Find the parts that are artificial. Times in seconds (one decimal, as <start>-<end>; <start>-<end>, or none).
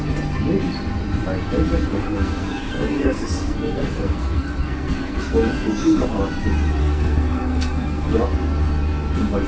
1.8-6.2; 6.8-8.2